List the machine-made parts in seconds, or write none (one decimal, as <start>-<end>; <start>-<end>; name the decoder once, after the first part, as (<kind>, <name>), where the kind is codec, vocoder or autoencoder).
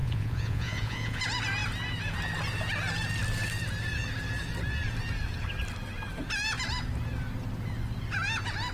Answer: 0.0-1.2 (vocoder, Vocos)